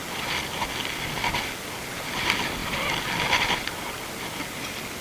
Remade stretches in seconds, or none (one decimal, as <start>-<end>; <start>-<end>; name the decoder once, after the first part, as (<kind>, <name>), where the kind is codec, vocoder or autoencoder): none